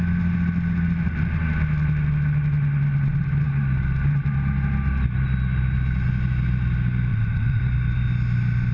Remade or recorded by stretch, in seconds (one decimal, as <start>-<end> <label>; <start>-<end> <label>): 0.0-7.1 recorded; 7.1-7.6 remade; 7.6-8.7 recorded